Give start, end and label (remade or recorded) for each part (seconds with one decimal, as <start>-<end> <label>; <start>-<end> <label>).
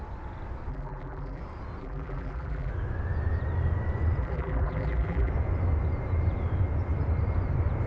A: 0.0-0.7 recorded; 0.7-1.4 remade; 1.4-1.8 recorded; 1.8-2.7 remade; 2.7-4.2 recorded; 4.2-5.3 remade; 5.3-7.9 recorded